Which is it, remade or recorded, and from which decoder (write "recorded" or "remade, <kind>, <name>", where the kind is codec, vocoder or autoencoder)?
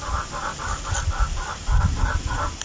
recorded